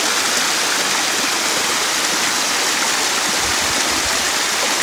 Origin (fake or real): real